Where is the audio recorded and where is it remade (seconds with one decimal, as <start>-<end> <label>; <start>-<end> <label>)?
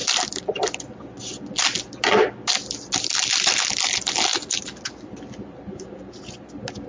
0.0-6.9 recorded